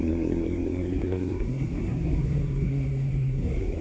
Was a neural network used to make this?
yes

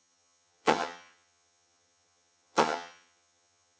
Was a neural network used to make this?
yes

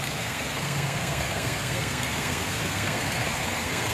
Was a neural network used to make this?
yes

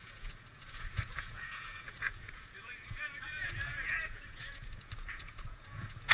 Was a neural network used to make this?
yes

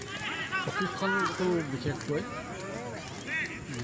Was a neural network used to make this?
no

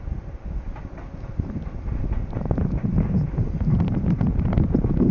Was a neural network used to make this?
no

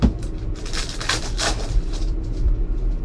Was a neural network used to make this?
yes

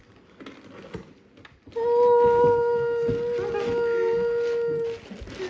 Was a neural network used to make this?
no